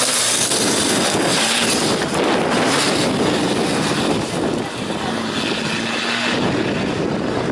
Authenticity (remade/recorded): recorded